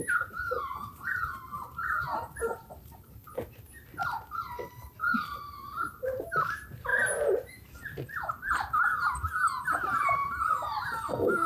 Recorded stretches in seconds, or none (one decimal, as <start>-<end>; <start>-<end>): 3.2-6.2; 6.9-9.6